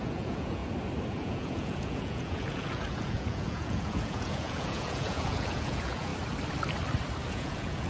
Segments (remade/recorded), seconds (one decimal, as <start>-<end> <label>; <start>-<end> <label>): 0.0-0.6 remade; 0.6-1.1 recorded; 1.1-6.1 remade; 6.1-7.3 recorded; 7.3-7.9 remade